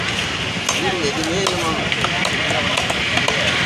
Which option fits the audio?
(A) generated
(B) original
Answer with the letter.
B